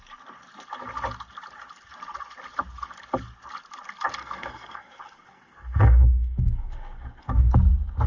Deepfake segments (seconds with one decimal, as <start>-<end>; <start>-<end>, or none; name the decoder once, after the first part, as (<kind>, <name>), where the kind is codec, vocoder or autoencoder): 4.2-7.5 (codec, SNAC)